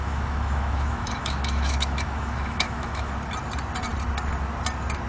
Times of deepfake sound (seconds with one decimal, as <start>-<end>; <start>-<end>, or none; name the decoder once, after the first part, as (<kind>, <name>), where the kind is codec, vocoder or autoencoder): 0.0-3.1 (autoencoder, DAC-VAE)